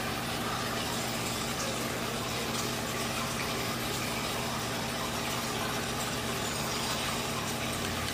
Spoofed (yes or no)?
no